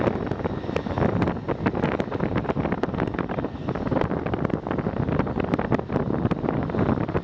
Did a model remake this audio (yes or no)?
no